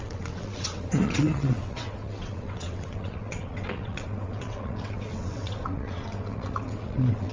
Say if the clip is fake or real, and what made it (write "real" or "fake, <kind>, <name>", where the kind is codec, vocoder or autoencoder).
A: fake, vocoder, WaveNeXt